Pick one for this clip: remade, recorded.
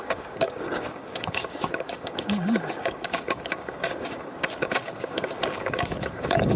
remade